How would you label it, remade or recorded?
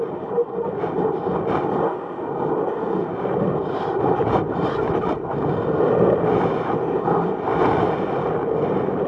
recorded